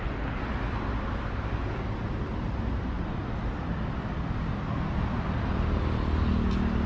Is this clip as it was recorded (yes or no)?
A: yes